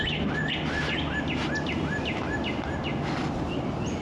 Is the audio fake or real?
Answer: real